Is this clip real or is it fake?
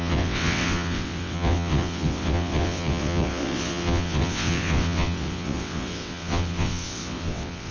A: fake